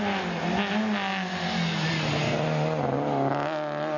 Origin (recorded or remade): recorded